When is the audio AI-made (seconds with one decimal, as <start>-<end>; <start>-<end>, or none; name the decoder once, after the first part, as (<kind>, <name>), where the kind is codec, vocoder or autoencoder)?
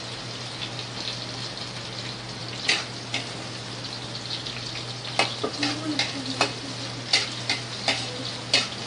none